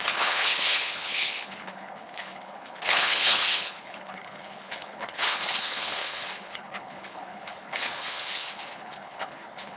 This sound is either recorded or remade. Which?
remade